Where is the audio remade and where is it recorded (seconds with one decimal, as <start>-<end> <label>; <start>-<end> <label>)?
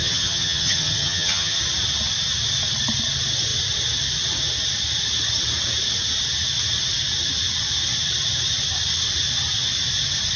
0.0-1.6 remade; 1.6-10.4 recorded